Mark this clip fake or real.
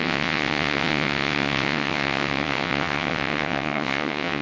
fake